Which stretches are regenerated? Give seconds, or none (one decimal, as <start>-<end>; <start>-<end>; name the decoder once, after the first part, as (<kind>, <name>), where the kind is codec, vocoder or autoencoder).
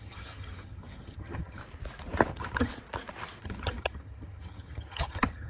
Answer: 0.0-1.6 (vocoder, HiFi-GAN); 2.3-2.7; 3.4-5.5